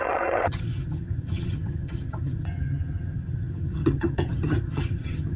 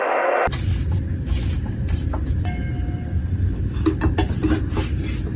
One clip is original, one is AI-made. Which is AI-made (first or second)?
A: first